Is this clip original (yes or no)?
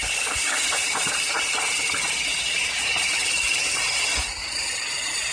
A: yes